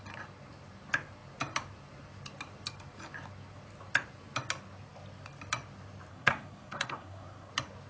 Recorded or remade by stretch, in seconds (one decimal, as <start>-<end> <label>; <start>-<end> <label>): 0.0-6.1 recorded; 6.1-7.5 remade; 7.5-7.9 recorded